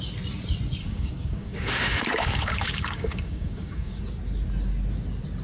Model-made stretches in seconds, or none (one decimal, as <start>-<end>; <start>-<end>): 0.8-4.0